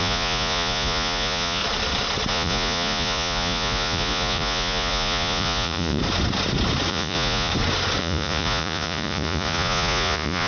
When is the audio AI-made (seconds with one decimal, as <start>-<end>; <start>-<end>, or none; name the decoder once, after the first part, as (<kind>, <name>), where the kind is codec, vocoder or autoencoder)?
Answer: 0.0-1.6 (vocoder, Vocos); 2.3-6.0; 6.9-7.5; 8.0-10.5